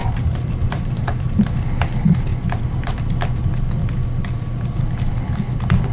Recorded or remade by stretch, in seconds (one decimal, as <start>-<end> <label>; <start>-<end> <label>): 0.0-1.4 remade; 1.4-5.9 recorded